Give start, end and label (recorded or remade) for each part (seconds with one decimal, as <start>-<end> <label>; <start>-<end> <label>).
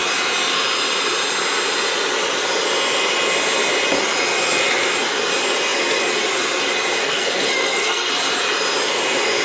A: 0.0-7.0 recorded; 7.0-8.1 remade; 8.1-9.4 recorded